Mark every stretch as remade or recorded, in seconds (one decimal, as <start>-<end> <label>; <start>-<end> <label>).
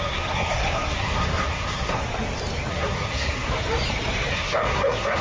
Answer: 0.0-2.0 remade; 2.0-2.7 recorded; 2.7-3.5 remade; 3.5-4.3 recorded; 4.3-5.2 remade